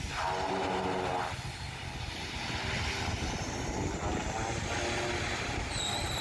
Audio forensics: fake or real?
real